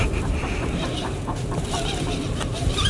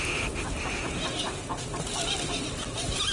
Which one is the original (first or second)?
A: second